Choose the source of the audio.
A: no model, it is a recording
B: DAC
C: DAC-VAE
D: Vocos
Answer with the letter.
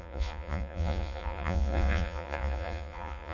D